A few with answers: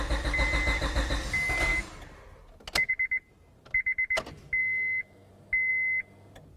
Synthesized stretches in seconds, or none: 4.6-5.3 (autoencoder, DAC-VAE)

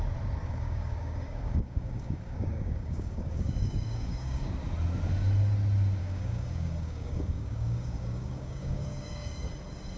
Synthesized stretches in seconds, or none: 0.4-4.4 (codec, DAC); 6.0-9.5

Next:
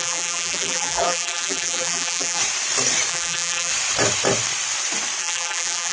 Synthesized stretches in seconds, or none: 0.0-2.4 (vocoder, BigVGAN v2); 3.1-3.7; 5.2-5.9